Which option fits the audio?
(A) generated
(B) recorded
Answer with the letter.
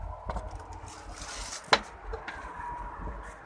B